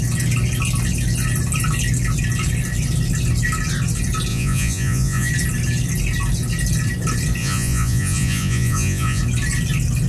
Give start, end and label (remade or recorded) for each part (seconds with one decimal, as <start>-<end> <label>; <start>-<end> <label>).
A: 0.0-4.3 recorded; 4.3-5.3 remade; 5.3-7.4 recorded; 7.4-9.2 remade; 9.2-10.1 recorded